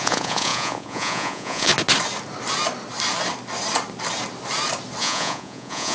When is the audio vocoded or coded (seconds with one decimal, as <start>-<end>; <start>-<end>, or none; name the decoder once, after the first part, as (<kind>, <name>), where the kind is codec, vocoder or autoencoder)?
0.0-1.7 (vocoder, Vocos); 5.0-5.9